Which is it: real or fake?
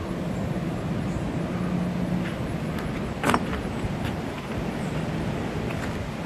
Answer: real